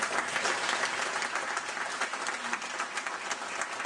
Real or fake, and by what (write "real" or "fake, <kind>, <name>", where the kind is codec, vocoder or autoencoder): real